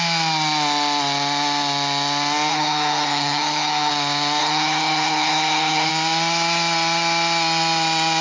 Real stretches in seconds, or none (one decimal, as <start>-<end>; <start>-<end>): 0.0-2.5; 3.9-4.4; 5.9-8.2